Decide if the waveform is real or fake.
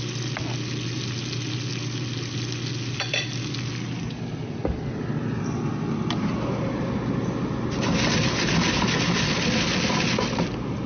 real